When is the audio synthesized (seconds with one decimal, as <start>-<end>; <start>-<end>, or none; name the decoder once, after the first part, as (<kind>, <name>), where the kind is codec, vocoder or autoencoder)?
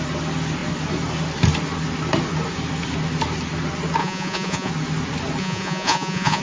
4.0-4.7 (vocoder, Vocos); 5.4-6.4